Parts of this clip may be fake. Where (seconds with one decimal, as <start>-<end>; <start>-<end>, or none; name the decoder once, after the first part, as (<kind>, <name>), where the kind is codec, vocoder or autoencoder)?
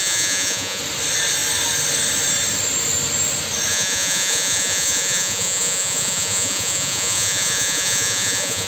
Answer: 0.0-0.8 (vocoder, Vocos); 3.7-8.7